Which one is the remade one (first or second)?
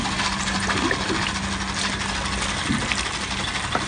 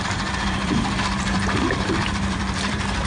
second